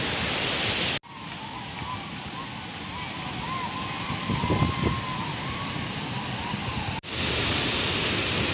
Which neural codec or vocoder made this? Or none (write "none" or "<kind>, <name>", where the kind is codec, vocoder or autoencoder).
none